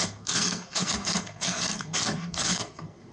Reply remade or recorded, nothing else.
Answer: remade